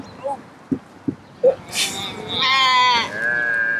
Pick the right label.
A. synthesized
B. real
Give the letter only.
B